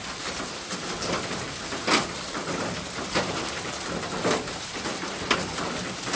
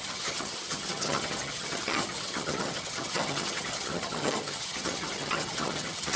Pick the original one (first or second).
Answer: first